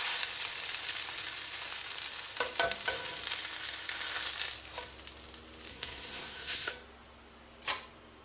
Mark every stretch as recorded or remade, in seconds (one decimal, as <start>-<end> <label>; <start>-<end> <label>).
0.0-5.7 recorded; 5.7-6.7 remade; 6.7-8.2 recorded